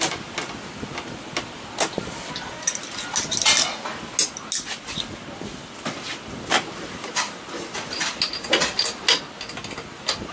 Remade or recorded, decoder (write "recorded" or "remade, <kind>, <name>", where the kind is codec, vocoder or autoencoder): recorded